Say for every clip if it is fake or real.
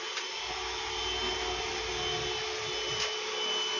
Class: real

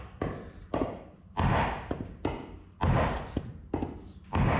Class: real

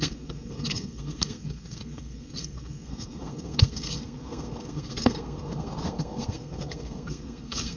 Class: fake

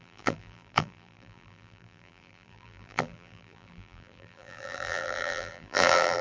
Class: fake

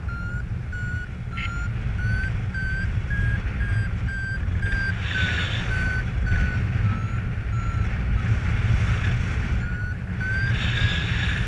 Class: real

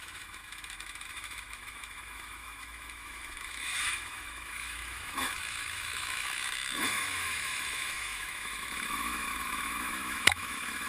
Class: fake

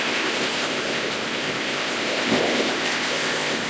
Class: fake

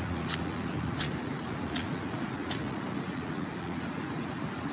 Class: fake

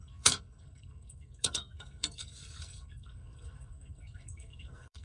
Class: fake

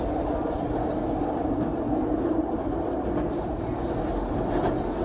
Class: real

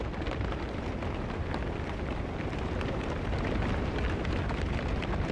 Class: real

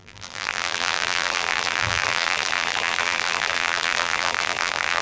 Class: fake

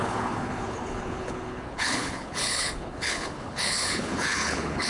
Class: fake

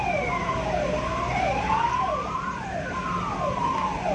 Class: real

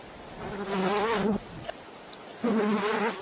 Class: real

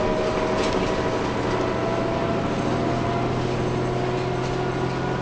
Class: real